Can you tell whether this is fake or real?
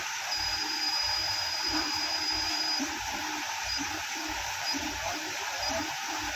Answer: fake